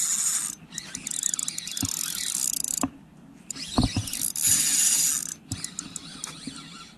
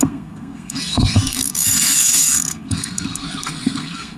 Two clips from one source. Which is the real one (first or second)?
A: first